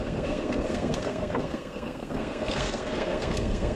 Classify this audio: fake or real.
fake